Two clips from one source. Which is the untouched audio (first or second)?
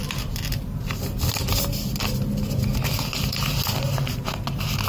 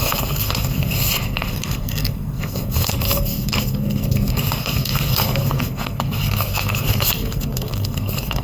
first